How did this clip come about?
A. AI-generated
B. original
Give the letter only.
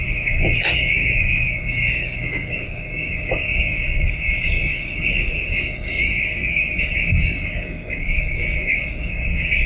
A